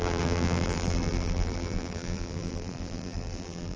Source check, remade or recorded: remade